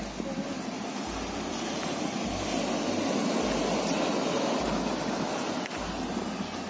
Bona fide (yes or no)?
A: yes